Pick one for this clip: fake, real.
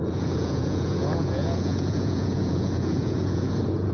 fake